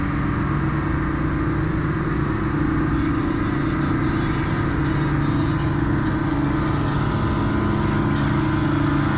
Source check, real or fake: real